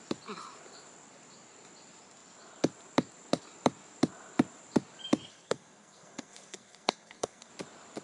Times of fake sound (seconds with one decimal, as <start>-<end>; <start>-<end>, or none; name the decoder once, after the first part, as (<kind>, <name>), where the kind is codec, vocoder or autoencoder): 5.3-7.5 (codec, SNAC)